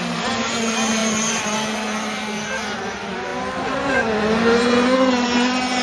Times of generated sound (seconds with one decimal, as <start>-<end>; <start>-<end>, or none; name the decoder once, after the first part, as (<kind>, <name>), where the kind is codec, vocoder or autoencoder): none